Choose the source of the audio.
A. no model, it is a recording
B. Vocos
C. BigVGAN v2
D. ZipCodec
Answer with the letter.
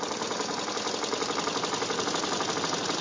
A